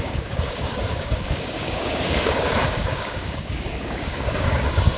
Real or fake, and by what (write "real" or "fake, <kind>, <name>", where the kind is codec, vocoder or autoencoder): fake, codec, DAC